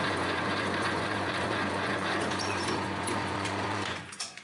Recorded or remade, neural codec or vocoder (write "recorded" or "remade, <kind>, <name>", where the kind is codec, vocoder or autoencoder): remade, vocoder, Vocos